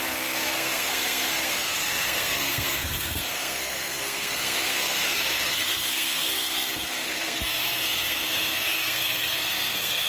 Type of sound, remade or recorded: remade